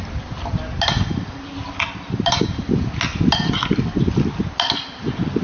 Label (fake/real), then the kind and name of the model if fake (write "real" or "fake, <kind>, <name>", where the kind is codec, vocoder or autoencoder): real